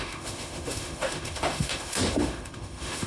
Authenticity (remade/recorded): remade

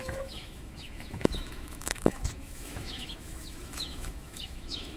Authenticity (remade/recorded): remade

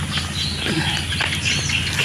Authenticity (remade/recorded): recorded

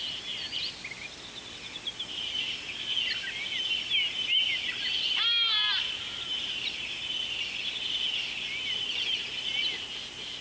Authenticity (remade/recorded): recorded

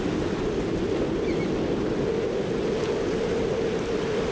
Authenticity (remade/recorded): recorded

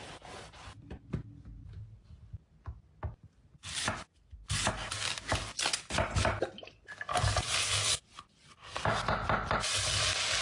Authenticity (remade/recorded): recorded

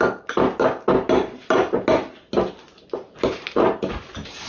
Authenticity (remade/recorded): recorded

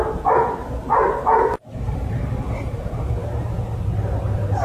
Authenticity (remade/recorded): recorded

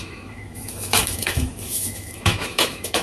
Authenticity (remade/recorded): remade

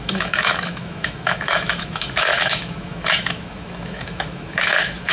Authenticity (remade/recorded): remade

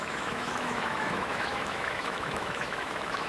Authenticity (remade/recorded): remade